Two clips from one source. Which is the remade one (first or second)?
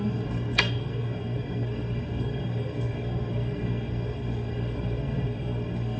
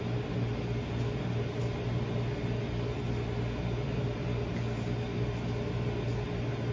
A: first